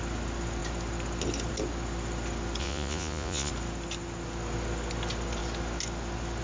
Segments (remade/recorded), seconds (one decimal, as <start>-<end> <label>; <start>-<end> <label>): 0.0-2.6 recorded; 2.6-3.5 remade; 3.5-6.4 recorded

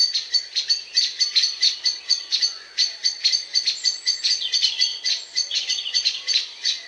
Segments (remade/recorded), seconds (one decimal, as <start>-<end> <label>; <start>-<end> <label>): 0.0-2.0 recorded; 2.0-3.2 remade; 3.2-4.0 recorded; 4.0-6.9 remade

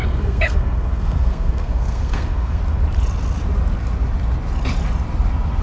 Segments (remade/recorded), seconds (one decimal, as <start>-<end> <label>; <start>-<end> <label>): 0.0-2.6 remade; 2.6-5.6 recorded

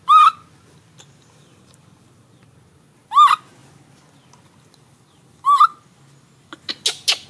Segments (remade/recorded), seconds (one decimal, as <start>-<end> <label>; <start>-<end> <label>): 0.0-7.3 recorded

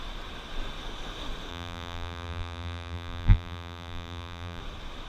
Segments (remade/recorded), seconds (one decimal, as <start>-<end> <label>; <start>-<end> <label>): 0.0-1.5 recorded; 1.5-4.6 remade; 4.6-5.1 recorded

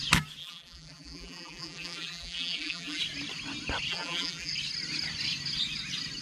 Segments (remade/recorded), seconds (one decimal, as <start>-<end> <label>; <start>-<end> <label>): 0.0-0.4 recorded; 0.4-3.0 remade; 3.0-3.9 recorded; 3.9-4.5 remade; 4.5-6.2 recorded

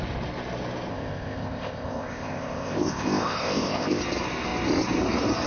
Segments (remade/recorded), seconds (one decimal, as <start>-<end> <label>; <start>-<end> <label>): 0.0-0.9 recorded; 0.9-4.0 remade; 4.0-5.5 recorded